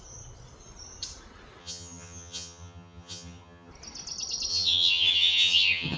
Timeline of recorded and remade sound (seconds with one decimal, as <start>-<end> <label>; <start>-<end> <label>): 0.0-1.6 recorded; 1.6-3.7 remade; 3.7-4.5 recorded; 4.5-6.0 remade